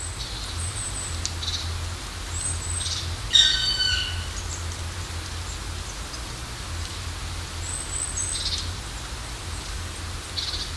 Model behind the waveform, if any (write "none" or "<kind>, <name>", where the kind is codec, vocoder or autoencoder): none